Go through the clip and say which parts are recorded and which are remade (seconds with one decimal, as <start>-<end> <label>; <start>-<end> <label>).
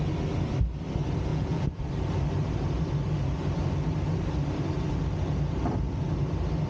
0.0-1.3 recorded; 1.3-1.8 remade; 1.8-6.7 recorded